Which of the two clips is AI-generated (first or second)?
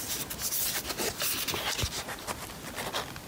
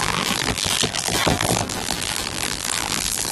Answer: second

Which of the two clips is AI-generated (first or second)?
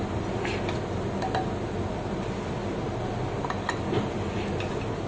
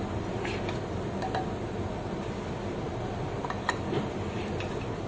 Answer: second